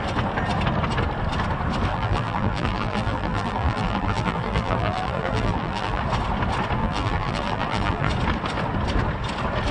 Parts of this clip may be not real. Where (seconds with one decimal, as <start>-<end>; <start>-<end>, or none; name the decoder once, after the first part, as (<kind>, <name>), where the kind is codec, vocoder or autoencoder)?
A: 1.9-6.0 (vocoder, BigVGAN v2); 6.8-8.1